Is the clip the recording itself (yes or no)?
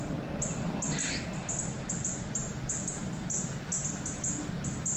yes